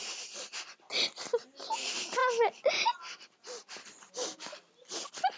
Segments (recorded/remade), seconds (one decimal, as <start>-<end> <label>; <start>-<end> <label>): 0.0-5.4 recorded

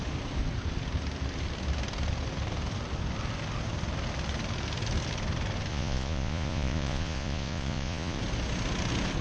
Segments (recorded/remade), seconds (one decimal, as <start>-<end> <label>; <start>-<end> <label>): 0.0-5.7 recorded; 5.7-8.2 remade; 8.2-9.2 recorded

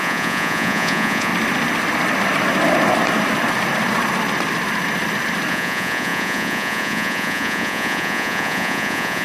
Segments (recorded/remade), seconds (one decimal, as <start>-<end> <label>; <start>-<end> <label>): 0.0-1.3 remade; 1.3-5.5 recorded; 5.5-9.2 remade

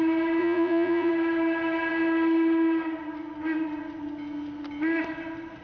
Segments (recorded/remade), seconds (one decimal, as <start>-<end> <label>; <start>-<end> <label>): 0.0-0.4 recorded; 0.4-1.1 remade; 1.1-5.6 recorded